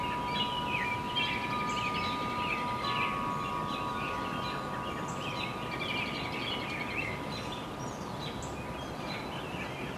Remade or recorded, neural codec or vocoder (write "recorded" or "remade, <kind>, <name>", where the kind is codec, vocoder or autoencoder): recorded